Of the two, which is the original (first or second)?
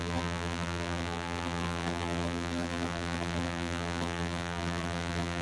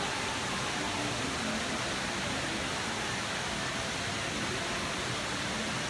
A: second